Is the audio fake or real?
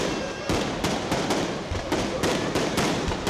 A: real